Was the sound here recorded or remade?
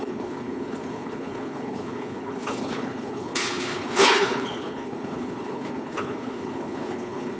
remade